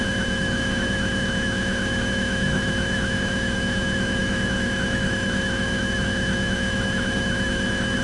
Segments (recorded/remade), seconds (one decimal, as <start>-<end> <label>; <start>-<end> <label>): 0.0-8.0 remade